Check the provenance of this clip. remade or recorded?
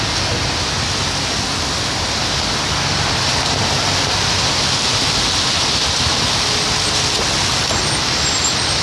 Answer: recorded